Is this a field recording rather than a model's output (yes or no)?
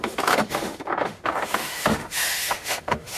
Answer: no